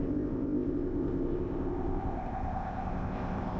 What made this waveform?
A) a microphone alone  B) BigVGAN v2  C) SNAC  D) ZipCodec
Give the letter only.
D